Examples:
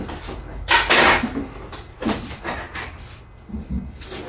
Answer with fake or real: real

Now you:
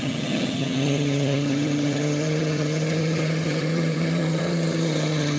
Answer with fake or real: fake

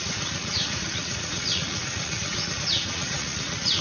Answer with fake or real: fake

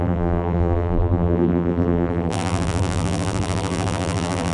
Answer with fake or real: fake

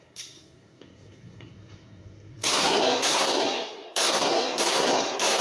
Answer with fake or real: fake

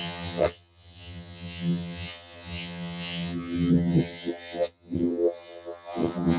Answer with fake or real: fake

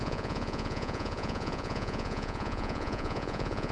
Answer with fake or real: fake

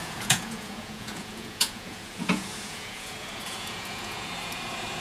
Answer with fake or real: fake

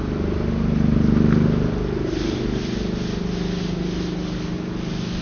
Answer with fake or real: real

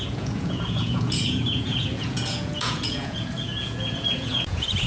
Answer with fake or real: fake